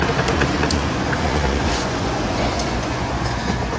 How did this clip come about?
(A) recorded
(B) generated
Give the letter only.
B